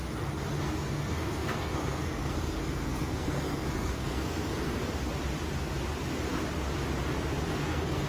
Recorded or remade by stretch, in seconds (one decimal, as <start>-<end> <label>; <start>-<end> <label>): 0.0-0.6 recorded; 0.6-4.8 remade; 4.8-7.5 recorded; 7.5-8.1 remade